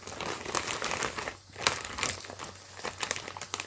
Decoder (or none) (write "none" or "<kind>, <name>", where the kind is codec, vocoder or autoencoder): none